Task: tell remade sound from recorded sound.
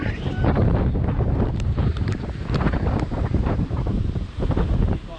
remade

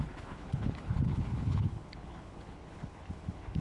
remade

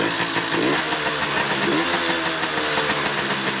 recorded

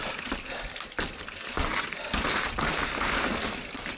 recorded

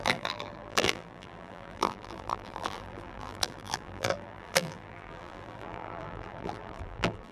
remade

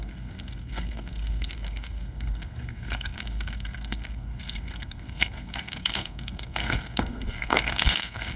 remade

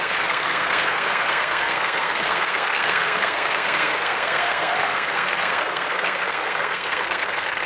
remade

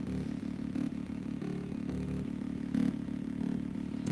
recorded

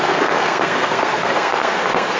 remade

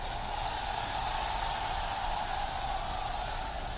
recorded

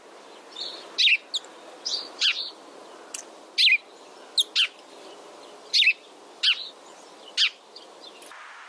recorded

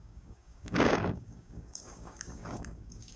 remade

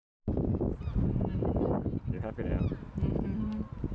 recorded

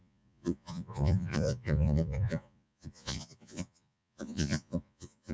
remade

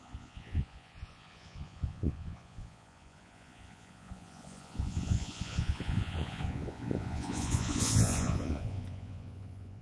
remade